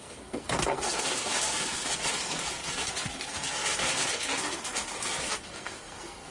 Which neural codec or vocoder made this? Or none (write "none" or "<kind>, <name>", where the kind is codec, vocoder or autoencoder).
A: codec, SNAC